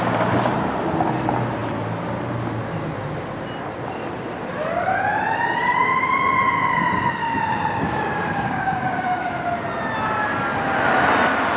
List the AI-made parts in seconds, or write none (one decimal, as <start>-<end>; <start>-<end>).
7.2-9.4